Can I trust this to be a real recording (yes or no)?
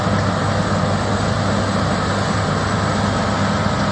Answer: yes